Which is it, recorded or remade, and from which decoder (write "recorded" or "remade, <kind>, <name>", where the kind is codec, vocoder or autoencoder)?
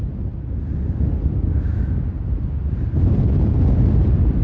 recorded